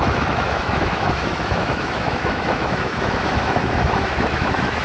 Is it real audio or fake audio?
fake